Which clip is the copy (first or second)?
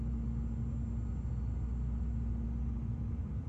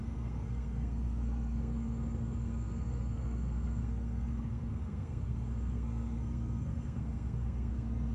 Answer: second